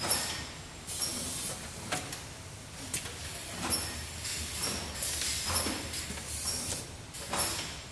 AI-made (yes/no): no